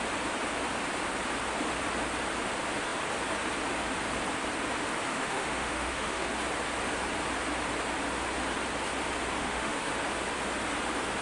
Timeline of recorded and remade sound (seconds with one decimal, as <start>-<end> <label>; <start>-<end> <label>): 0.0-5.1 recorded; 5.1-6.3 remade; 6.3-9.4 recorded; 9.4-9.9 remade; 9.9-11.2 recorded